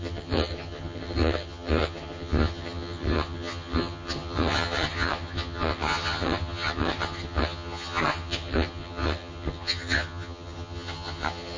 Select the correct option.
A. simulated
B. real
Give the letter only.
A